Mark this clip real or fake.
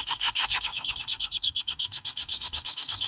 fake